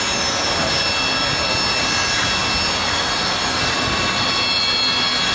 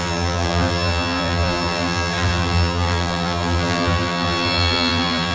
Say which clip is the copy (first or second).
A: second